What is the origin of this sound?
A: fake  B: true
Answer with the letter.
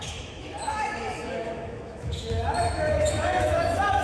A